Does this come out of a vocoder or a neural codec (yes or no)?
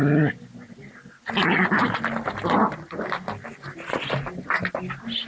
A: no